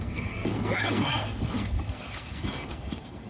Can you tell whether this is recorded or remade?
remade